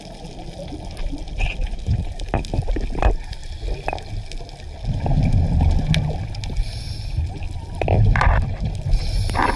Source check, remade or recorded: recorded